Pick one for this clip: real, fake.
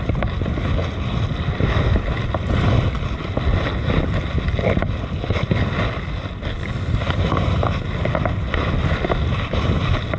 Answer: real